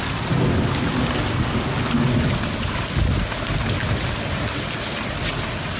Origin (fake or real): real